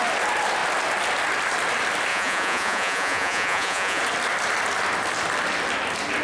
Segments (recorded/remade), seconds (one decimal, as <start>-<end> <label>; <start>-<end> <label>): 0.0-2.1 recorded; 2.1-4.0 remade; 4.0-6.2 recorded